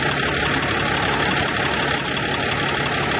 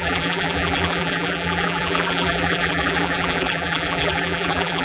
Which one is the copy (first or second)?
second